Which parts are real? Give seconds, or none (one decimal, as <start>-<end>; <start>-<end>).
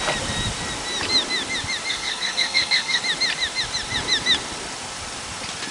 0.0-1.9; 3.0-5.7